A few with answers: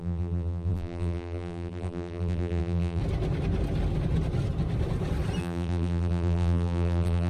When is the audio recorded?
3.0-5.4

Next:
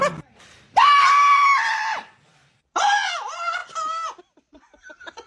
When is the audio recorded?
3.6-4.2

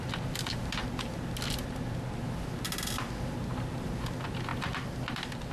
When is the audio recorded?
0.0-4.5

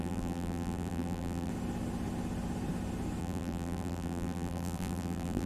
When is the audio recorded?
1.5-3.2

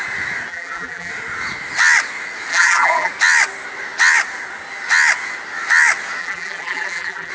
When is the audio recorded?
0.0-0.5; 1.1-2.5; 3.1-6.2

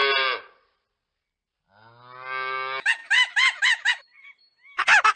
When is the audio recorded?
0.8-3.0; 4.4-5.2